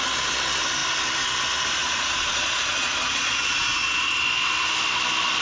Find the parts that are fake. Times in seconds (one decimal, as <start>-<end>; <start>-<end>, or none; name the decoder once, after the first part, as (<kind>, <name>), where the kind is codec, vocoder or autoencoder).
1.8-4.2 (vocoder, Vocos)